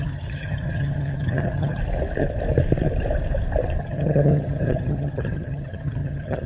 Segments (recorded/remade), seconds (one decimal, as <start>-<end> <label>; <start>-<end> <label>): 0.0-1.8 remade; 1.8-3.8 recorded; 3.8-6.5 remade